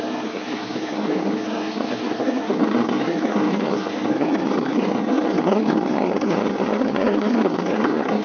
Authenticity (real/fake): fake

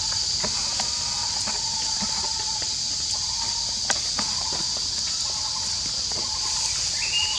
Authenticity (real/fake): real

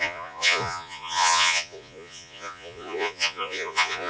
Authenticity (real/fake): fake